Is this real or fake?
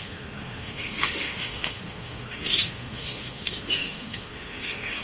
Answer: fake